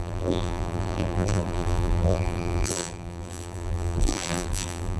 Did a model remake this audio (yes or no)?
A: yes